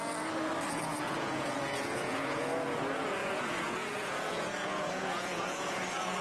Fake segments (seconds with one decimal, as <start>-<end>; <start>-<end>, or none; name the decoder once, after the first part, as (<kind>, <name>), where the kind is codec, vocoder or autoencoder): 0.7-6.2 (vocoder, Vocos)